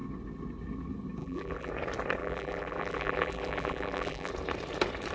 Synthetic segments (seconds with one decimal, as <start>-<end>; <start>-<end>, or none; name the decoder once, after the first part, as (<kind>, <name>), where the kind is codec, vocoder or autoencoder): 1.2-1.7 (vocoder, BigVGAN v2); 2.2-4.3